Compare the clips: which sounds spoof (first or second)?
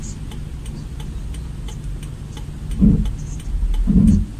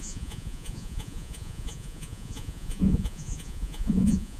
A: second